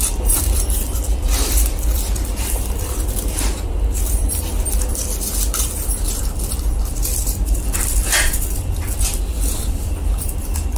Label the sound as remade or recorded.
remade